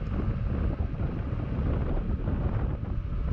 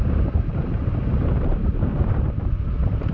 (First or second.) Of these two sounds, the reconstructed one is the second